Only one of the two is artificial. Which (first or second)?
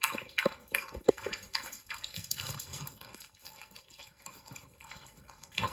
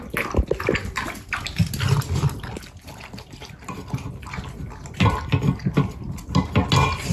first